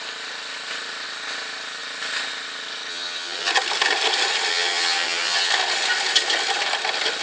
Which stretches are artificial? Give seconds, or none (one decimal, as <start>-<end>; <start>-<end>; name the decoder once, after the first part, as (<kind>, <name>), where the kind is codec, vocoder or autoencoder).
2.9-3.5 (vocoder, HiFi-GAN); 4.5-5.5